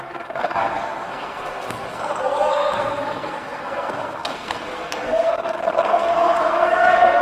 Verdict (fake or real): fake